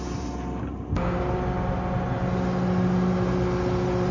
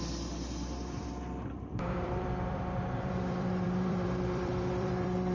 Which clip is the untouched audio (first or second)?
first